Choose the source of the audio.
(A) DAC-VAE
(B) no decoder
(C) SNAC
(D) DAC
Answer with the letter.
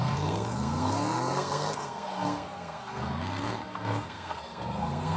C